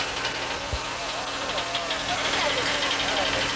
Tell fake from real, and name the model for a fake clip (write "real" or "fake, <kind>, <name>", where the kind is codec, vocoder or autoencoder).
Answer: real